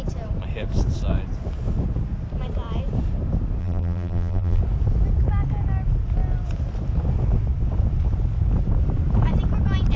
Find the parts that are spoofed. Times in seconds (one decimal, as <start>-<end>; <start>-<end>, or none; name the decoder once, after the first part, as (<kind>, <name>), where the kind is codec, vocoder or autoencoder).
3.6-4.6 (vocoder, BigVGAN v2)